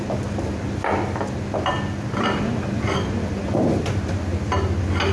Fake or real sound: real